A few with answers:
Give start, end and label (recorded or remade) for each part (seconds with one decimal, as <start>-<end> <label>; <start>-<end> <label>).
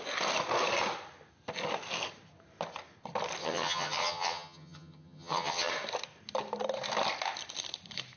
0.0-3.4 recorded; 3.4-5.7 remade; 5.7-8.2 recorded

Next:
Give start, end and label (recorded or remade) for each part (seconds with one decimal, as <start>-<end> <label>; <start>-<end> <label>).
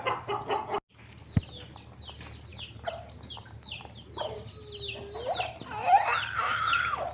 0.0-7.1 recorded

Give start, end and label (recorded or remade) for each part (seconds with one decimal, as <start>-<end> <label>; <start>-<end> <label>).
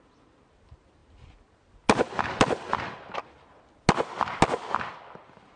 0.0-5.6 recorded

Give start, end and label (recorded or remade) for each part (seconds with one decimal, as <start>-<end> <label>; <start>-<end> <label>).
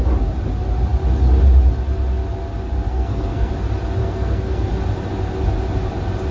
0.0-2.9 recorded; 2.9-3.5 remade; 3.5-4.0 recorded; 4.0-4.7 remade; 4.7-6.3 recorded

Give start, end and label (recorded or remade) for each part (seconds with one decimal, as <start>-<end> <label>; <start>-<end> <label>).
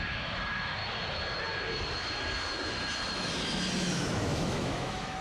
0.0-0.8 remade; 0.8-3.9 recorded; 3.9-5.2 remade